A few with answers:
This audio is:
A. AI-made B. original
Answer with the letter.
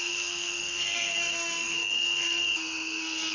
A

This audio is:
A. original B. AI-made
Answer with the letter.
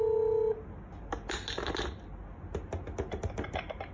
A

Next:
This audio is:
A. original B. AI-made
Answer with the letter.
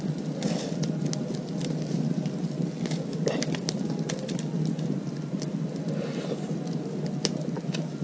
A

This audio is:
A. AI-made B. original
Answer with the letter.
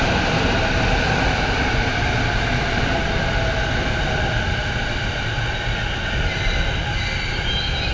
B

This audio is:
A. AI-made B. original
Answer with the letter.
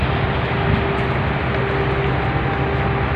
B